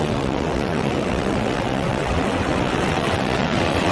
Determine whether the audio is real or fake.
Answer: fake